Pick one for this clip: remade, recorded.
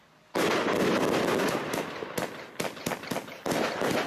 recorded